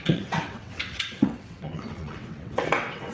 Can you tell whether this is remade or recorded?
remade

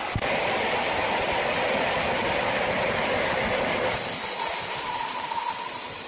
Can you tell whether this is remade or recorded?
recorded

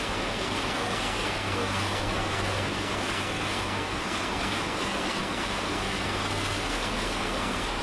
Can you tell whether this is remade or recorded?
remade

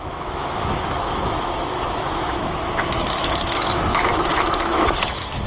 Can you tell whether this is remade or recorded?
remade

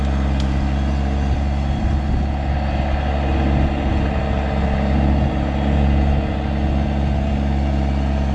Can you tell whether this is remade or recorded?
recorded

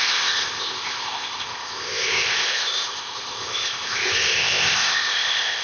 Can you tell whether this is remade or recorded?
remade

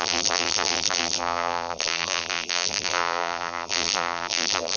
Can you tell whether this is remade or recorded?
remade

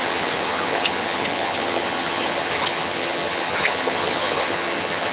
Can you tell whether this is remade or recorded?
remade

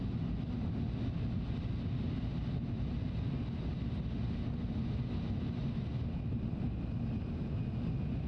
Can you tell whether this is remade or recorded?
recorded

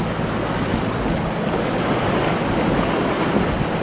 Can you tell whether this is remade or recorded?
recorded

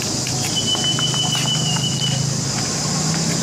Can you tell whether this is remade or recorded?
recorded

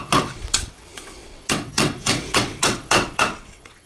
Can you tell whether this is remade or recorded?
remade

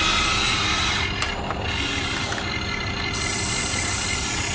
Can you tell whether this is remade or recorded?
recorded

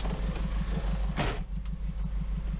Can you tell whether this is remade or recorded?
recorded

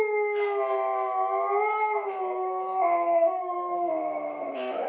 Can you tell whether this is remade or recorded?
remade